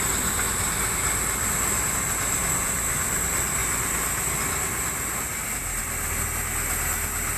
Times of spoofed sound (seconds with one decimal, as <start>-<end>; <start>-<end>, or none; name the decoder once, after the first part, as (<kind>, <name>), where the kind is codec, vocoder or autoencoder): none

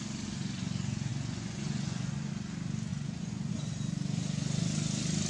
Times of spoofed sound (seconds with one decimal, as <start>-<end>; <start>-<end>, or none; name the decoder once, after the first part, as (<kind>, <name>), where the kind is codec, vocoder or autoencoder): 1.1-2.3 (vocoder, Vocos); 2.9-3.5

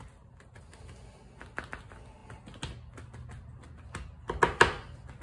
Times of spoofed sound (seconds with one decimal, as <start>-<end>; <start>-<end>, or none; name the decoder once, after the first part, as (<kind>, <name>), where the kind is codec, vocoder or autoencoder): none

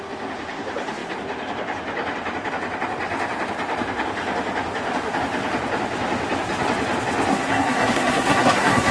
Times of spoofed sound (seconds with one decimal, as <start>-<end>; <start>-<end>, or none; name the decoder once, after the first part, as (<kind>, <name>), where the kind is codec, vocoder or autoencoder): 7.3-8.9 (codec, SNAC)

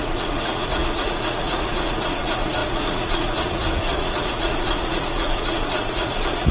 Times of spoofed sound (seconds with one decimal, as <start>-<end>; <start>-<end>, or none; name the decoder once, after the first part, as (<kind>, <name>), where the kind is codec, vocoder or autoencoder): 0.0-6.5 (vocoder, Vocos)